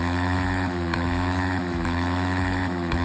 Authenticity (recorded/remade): remade